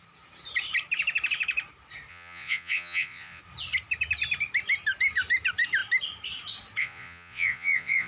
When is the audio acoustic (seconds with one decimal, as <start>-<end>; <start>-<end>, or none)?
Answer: 0.0-2.1; 3.4-6.8